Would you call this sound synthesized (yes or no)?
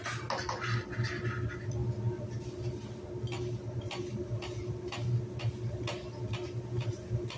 no